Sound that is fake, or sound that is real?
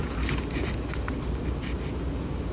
real